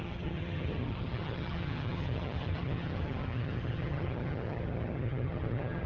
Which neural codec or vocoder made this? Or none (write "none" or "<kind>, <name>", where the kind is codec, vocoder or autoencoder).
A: vocoder, HiFi-GAN